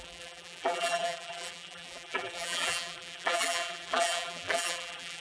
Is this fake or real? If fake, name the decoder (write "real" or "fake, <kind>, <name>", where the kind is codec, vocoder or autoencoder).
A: fake, vocoder, BigVGAN v2